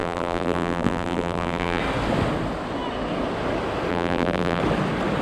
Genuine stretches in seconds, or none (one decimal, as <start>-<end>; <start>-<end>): 1.8-3.9; 4.6-5.2

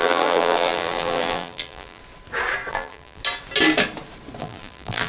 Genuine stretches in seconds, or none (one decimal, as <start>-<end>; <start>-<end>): 2.0-2.7; 3.2-4.4

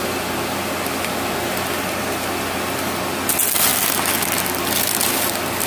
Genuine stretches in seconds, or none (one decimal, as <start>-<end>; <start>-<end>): 0.0-5.7

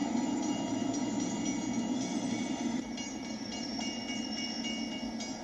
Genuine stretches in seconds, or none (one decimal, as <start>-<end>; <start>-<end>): 1.4-2.1; 4.0-5.4

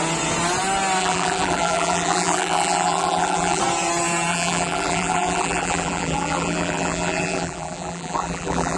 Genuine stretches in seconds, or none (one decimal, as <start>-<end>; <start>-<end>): 0.0-1.0; 3.6-4.3

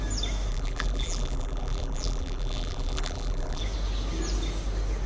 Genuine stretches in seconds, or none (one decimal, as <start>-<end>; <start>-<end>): 0.0-0.5; 3.6-5.1